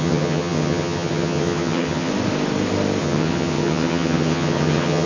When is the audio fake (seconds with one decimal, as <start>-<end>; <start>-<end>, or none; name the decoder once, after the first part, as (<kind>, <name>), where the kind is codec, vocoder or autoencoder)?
0.0-2.1 (vocoder, HiFi-GAN); 3.0-5.1